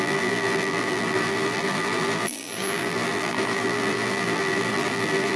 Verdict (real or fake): fake